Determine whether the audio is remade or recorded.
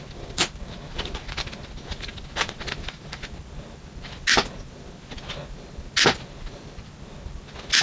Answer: recorded